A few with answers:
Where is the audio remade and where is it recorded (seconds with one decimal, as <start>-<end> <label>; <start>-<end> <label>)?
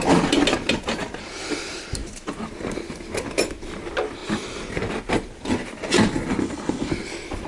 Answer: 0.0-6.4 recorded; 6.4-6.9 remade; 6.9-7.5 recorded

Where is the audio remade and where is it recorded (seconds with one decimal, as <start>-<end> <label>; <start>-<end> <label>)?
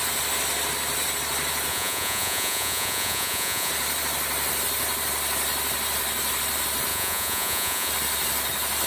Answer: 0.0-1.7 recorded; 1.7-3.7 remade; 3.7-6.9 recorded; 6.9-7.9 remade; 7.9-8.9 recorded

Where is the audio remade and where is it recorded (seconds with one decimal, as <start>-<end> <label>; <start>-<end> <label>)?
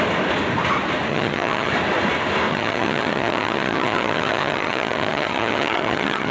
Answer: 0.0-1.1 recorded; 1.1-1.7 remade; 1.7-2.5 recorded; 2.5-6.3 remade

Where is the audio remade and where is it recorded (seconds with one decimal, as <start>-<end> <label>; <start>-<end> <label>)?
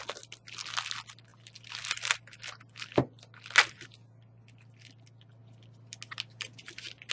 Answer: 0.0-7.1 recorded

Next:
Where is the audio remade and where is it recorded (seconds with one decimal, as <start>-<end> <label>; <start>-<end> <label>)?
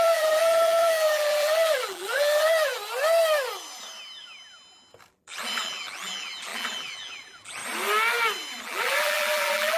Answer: 0.0-2.7 remade; 2.7-5.1 recorded; 5.1-7.6 remade; 7.6-8.6 recorded; 8.6-9.8 remade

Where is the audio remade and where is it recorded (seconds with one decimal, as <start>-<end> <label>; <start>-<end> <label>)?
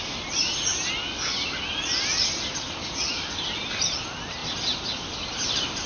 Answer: 0.0-5.9 recorded